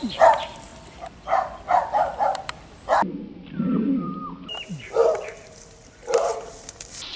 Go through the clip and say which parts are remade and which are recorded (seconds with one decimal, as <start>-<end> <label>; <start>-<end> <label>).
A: 0.0-7.2 remade